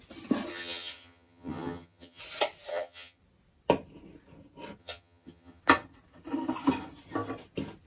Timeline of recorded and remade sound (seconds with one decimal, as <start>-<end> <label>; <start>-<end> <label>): 0.0-0.5 recorded; 0.5-2.2 remade; 2.2-2.7 recorded; 2.7-3.2 remade; 3.2-4.8 recorded; 4.8-5.6 remade; 5.6-7.9 recorded